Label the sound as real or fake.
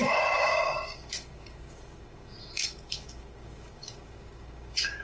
fake